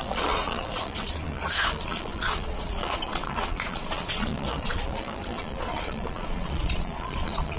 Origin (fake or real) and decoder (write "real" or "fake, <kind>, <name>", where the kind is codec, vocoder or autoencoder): fake, vocoder, Vocos